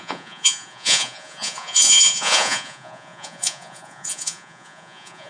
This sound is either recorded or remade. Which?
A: remade